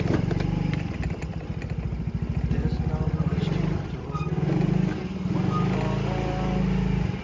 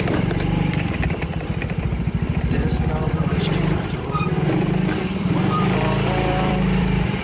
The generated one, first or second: second